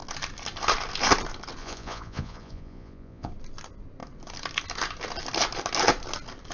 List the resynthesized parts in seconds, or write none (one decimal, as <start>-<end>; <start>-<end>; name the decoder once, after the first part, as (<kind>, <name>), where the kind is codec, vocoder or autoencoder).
1.6-3.3 (vocoder, Vocos)